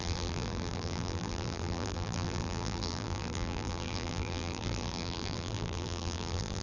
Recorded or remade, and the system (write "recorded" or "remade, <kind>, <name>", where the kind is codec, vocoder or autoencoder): remade, vocoder, BigVGAN v2